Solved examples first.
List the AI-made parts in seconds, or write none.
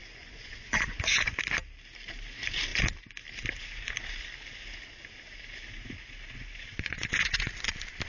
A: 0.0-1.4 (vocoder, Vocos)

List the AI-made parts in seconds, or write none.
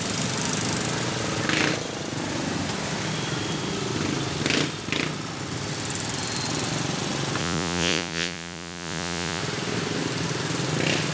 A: 7.4-9.4 (vocoder, Vocos)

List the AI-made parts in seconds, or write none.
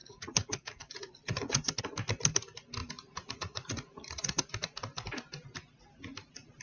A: 0.0-1.8 (vocoder, Vocos); 2.8-4.5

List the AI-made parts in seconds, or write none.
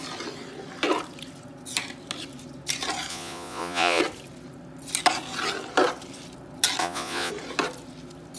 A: 3.1-4.0 (vocoder, Vocos); 6.8-7.3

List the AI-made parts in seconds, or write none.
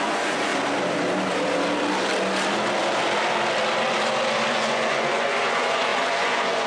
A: 0.0-0.5 (vocoder, Vocos); 4.5-6.7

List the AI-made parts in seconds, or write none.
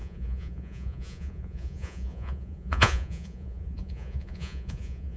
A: 0.0-5.2 (vocoder, Vocos)